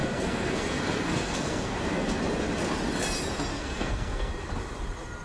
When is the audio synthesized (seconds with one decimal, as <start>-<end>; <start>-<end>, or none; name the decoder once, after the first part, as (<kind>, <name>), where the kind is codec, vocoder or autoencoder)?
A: 0.0-2.2 (codec, SNAC); 3.5-4.3